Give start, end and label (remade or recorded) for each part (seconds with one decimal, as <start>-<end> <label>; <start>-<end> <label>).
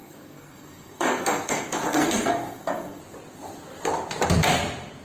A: 0.0-3.0 remade; 3.0-5.0 recorded